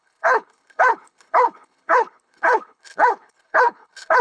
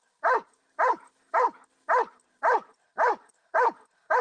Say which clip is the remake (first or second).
first